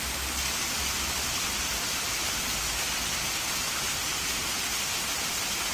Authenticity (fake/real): real